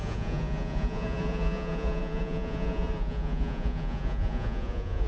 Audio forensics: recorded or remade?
remade